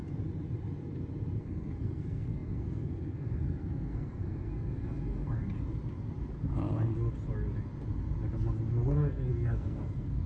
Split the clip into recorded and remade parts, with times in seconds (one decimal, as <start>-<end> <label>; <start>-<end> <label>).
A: 0.0-1.4 recorded; 1.4-5.4 remade; 5.4-8.7 recorded; 8.7-10.3 remade